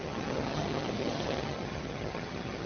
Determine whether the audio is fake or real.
fake